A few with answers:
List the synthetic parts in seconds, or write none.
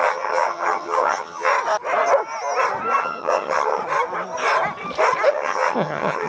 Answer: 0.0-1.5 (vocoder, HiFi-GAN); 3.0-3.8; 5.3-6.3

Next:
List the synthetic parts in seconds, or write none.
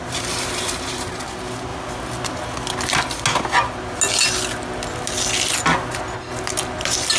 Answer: none